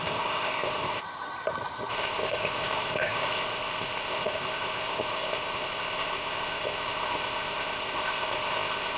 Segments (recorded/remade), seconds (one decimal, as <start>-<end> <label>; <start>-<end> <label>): 0.0-1.0 remade; 1.0-1.9 recorded; 1.9-9.0 remade